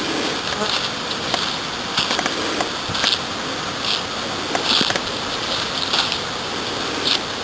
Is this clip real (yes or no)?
yes